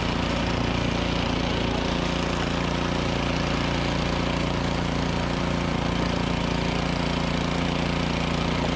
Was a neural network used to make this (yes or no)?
no